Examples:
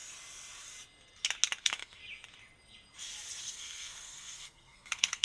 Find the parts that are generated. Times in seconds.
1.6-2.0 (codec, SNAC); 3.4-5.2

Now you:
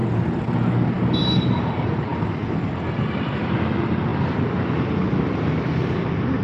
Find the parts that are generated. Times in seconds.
none

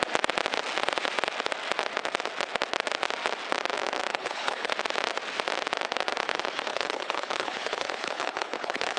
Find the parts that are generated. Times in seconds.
4.1-4.7 (codec, HILCodec); 6.7-9.0

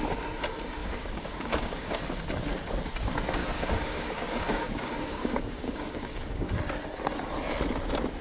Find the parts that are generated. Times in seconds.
0.8-2.0 (codec, DAC); 3.4-6.5

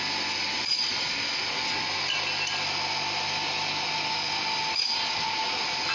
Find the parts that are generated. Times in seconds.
none

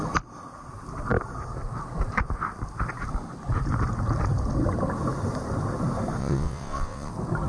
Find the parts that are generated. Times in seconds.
6.2-7.1 (vocoder, WaveNeXt)